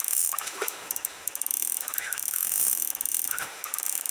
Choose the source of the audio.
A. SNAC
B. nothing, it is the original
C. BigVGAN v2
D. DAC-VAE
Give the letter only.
D